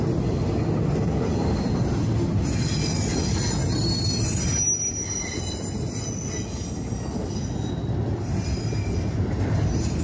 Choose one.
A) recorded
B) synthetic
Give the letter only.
A